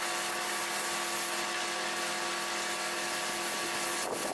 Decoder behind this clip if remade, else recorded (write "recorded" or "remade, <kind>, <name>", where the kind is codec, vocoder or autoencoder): recorded